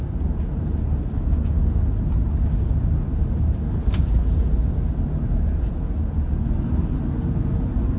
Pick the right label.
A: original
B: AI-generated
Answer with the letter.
A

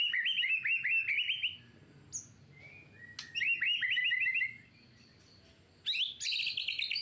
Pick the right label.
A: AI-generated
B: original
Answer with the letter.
B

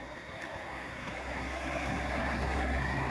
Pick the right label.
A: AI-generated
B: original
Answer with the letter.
A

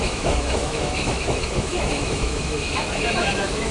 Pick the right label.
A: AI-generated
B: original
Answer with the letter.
A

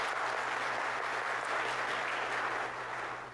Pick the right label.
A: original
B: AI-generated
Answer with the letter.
A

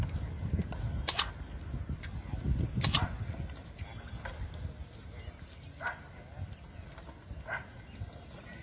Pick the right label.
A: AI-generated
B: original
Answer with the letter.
B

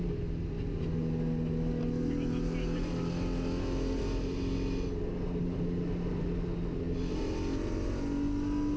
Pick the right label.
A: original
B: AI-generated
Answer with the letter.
A